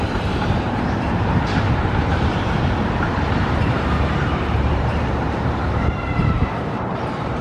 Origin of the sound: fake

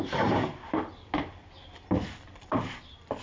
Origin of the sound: real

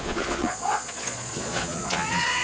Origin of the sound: fake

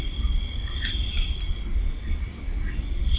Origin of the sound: fake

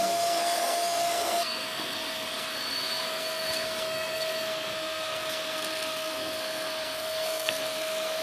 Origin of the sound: fake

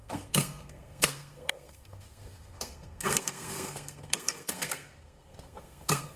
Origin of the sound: fake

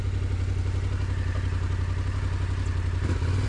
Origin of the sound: real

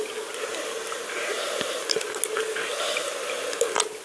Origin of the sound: real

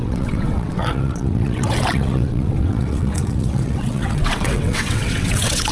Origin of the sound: fake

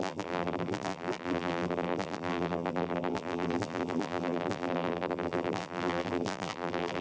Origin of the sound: fake